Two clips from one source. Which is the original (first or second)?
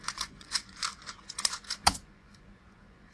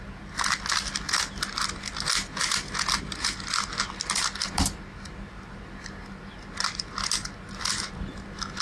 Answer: second